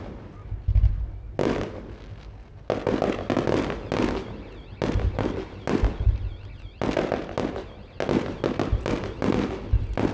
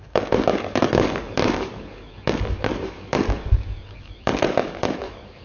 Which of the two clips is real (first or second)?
first